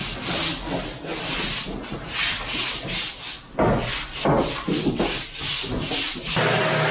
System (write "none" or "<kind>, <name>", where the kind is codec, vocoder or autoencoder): none